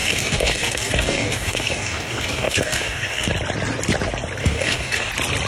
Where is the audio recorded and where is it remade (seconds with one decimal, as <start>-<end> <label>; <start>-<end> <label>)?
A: 0.0-3.3 remade; 3.3-4.4 recorded; 4.4-5.1 remade; 5.1-5.5 recorded